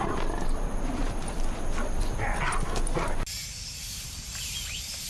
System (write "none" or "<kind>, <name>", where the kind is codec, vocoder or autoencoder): none